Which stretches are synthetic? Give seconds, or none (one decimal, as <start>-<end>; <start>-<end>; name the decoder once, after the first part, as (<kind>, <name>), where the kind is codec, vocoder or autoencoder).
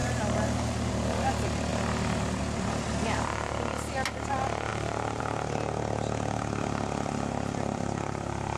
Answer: 0.0-0.9 (vocoder, BigVGAN v2); 4.7-5.2